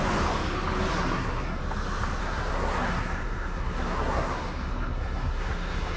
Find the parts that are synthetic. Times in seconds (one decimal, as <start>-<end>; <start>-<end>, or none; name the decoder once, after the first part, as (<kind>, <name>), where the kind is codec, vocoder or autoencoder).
0.9-1.6 (codec, SNAC); 2.2-6.0